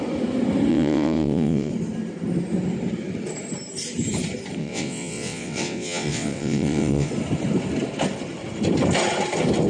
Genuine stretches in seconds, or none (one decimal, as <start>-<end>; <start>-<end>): 0.0-0.7; 1.7-4.6; 7.1-9.7